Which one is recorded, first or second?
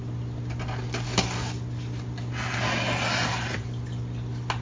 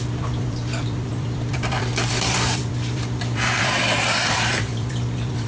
first